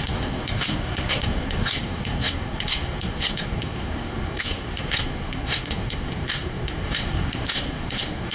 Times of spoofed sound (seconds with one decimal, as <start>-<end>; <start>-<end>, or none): 0.0-8.3